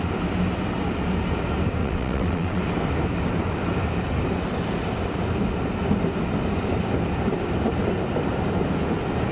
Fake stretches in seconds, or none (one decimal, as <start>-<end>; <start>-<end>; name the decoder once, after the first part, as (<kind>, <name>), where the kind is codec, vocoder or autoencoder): 1.8-2.6 (vocoder, WaveNeXt)